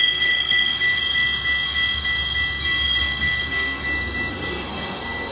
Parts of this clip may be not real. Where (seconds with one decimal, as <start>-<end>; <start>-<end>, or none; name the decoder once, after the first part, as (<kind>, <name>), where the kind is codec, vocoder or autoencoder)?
0.0-1.0 (codec, SNAC); 3.0-3.8; 4.3-5.3